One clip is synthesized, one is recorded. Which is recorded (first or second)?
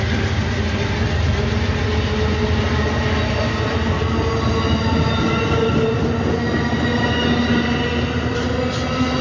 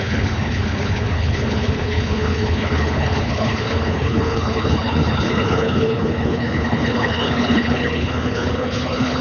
first